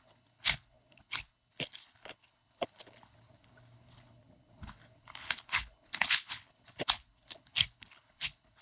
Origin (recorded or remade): remade